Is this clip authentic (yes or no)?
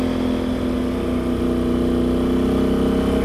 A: yes